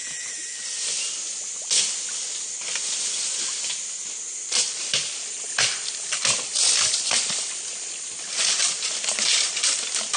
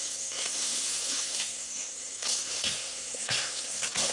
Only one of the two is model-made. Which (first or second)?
second